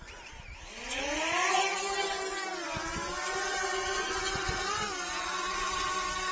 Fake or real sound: real